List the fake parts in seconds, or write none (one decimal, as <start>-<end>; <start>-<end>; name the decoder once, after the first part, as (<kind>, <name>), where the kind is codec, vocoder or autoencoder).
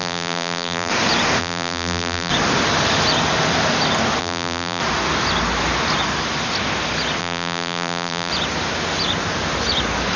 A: 0.0-0.9 (vocoder, BigVGAN v2); 1.4-2.3; 4.2-4.8; 7.2-8.3